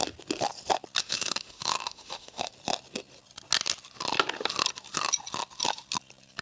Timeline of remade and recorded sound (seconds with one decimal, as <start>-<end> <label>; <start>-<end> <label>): 0.0-1.0 recorded; 1.0-2.5 remade; 2.5-6.4 recorded